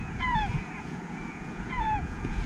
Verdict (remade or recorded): remade